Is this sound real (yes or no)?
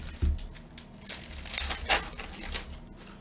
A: yes